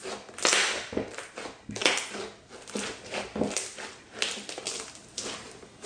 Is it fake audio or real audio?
real